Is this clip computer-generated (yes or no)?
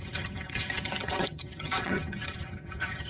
yes